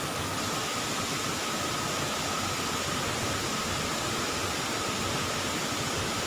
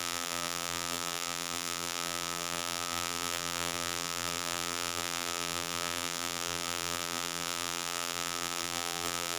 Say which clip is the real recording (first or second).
first